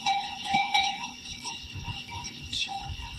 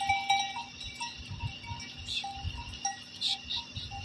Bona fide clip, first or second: second